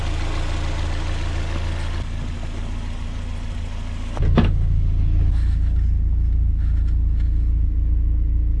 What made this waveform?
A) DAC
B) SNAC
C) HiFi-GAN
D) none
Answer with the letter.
D